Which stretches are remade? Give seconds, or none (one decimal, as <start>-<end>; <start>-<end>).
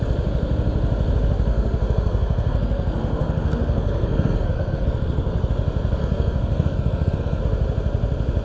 1.5-5.5; 6.0-7.4